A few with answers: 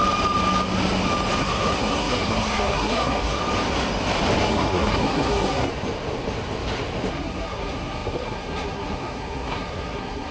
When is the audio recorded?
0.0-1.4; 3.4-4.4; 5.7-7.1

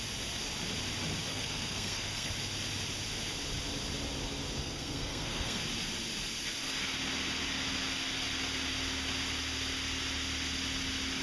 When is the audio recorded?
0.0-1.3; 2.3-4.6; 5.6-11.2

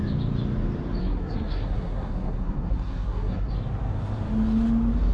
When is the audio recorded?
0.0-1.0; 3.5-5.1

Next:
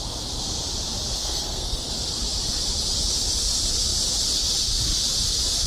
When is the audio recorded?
0.0-1.2; 1.9-5.7

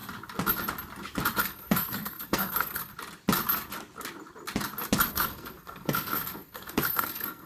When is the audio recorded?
0.0-1.4; 2.9-5.1